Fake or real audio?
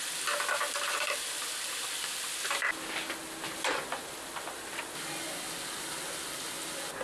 real